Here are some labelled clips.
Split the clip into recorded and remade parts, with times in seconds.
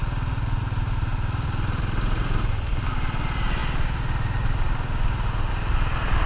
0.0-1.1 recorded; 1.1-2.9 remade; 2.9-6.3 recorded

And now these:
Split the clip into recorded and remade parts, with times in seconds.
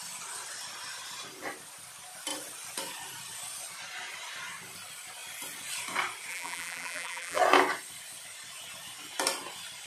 0.0-6.3 recorded; 6.3-7.4 remade; 7.4-9.9 recorded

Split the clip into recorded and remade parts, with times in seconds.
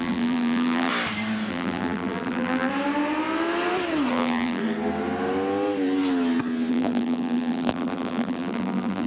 0.0-0.9 remade; 0.9-1.5 recorded; 1.5-2.7 remade; 2.7-4.1 recorded; 4.1-4.6 remade; 4.6-6.7 recorded; 6.7-9.1 remade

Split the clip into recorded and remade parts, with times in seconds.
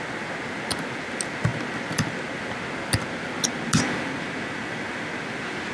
0.0-5.7 recorded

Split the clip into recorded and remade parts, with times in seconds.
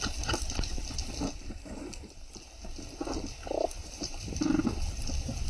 0.0-1.0 recorded; 1.0-2.3 remade; 2.3-3.8 recorded; 3.8-4.6 remade; 4.6-5.5 recorded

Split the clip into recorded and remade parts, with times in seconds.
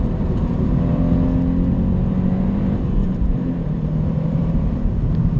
0.0-1.0 remade; 1.0-2.1 recorded; 2.1-5.4 remade